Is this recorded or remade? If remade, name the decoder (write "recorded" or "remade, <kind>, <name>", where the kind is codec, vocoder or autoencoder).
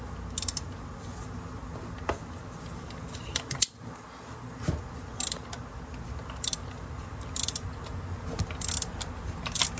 recorded